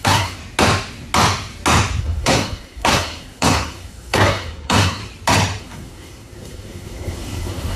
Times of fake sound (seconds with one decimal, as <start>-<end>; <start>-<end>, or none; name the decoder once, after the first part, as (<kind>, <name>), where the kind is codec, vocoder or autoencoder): 0.0-0.4 (codec, SNAC); 2.0-5.0; 5.6-7.8